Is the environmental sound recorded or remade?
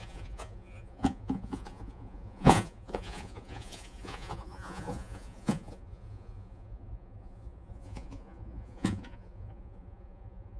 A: remade